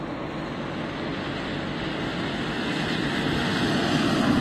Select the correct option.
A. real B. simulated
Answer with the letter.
A